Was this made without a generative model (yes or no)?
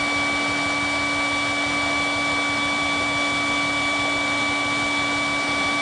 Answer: yes